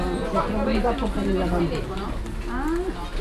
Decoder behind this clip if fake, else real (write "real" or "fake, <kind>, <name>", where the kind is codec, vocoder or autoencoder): real